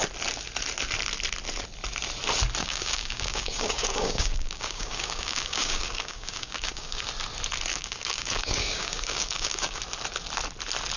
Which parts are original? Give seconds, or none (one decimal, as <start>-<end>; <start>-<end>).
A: 0.0-2.6; 7.0-7.7; 9.8-11.0